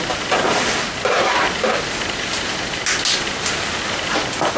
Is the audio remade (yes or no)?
no